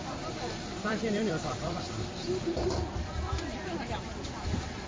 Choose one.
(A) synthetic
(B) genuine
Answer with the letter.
A